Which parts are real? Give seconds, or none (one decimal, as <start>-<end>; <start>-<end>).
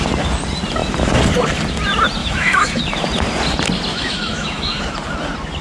0.0-2.2; 2.8-3.9; 4.8-5.6